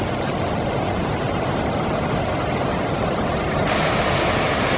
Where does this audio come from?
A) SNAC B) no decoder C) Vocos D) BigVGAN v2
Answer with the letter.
B